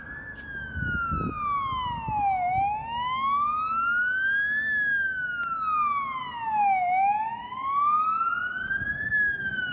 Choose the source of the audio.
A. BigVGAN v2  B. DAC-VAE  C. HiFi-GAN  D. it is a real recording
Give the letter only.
D